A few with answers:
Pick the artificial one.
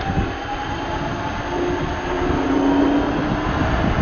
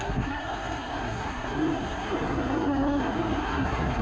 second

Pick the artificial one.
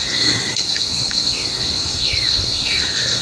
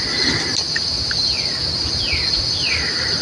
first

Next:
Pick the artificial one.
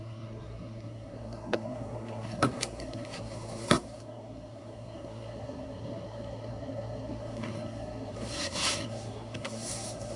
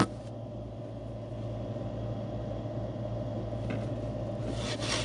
first